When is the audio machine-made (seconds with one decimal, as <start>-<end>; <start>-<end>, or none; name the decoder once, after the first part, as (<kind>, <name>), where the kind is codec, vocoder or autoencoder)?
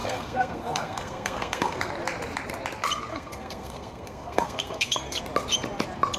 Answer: 0.0-1.9 (codec, SNAC); 3.1-5.2